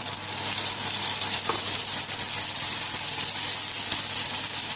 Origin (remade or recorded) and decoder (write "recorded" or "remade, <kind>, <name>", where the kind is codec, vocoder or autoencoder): recorded